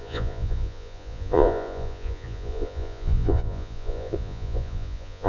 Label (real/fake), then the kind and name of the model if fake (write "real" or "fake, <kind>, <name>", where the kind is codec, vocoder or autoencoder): fake, vocoder, Vocos